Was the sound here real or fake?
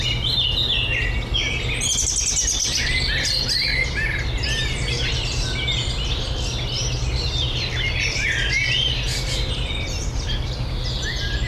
real